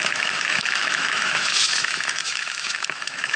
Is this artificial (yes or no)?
yes